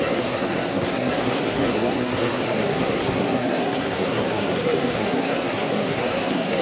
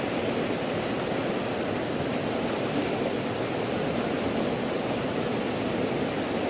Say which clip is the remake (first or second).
first